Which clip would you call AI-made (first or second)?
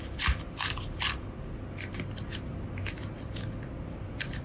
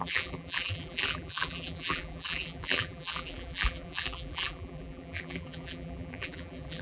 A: second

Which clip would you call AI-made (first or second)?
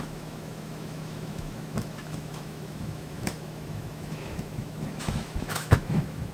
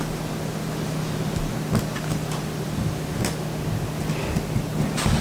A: first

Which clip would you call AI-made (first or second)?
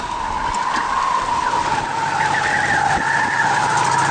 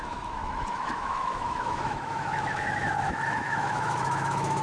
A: second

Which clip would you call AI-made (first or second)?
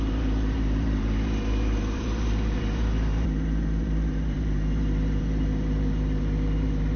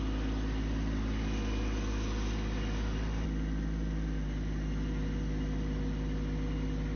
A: first